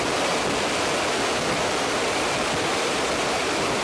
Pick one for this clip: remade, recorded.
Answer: recorded